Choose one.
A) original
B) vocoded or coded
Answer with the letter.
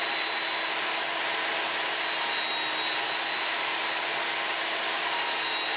A